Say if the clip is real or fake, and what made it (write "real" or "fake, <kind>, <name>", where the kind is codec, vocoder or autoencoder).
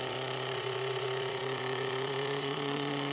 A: fake, vocoder, Vocos